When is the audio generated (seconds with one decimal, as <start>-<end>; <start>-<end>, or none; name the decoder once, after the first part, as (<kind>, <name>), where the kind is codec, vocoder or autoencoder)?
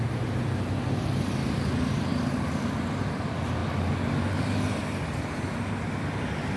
none